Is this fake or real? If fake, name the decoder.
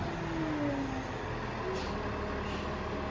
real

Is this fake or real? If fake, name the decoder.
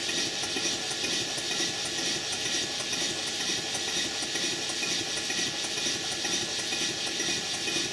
real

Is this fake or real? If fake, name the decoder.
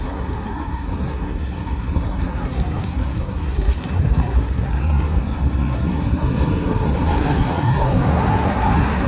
fake, codec, SNAC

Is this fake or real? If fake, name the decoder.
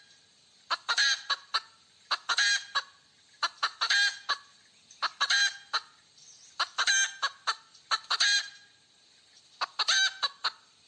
real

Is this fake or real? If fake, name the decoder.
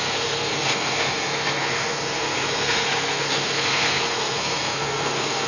fake, codec, SNAC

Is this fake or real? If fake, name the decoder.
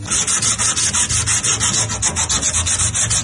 real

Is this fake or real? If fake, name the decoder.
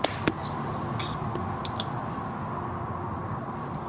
real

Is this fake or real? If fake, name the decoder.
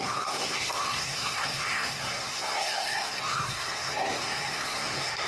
fake, codec, SNAC